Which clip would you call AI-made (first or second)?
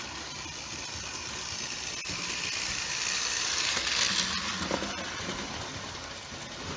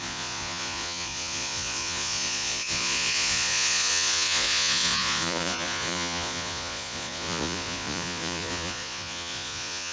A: second